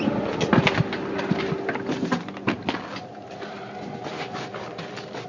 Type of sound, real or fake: real